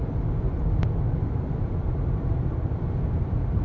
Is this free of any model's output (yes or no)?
no